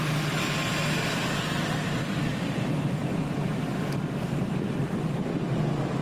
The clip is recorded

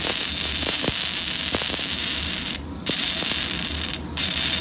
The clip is remade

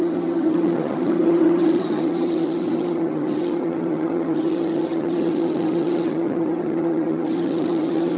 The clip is remade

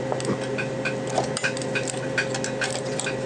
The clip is recorded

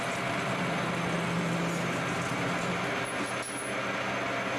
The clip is recorded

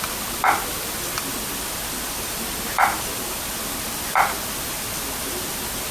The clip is recorded